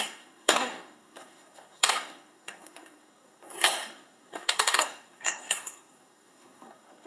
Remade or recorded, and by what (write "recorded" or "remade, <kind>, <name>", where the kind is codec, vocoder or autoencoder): remade, codec, SNAC